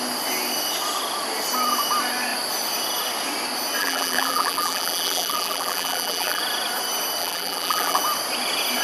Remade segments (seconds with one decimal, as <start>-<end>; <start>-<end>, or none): 3.8-6.4; 7.2-8.0